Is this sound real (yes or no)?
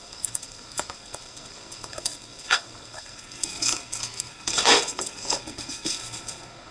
no